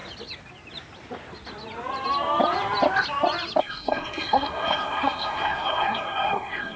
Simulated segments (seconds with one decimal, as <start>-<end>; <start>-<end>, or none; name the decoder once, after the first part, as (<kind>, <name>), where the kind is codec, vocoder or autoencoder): 3.6-6.8 (codec, SNAC)